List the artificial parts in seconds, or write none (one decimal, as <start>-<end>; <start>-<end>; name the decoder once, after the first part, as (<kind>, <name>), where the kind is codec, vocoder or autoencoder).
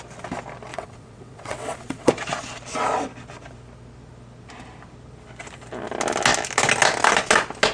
0.7-2.1 (vocoder, WaveNeXt)